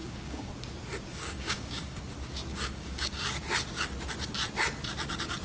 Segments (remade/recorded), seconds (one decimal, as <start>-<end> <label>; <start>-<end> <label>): 0.0-0.5 remade; 0.5-1.1 recorded; 1.1-2.0 remade; 2.0-2.5 recorded; 2.5-3.1 remade; 3.1-5.4 recorded